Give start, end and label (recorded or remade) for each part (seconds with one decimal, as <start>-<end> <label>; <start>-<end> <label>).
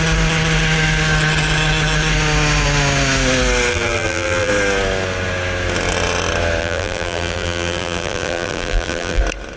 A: 0.0-3.7 recorded; 3.7-4.5 remade; 4.5-6.6 recorded; 6.6-9.2 remade; 9.2-9.6 recorded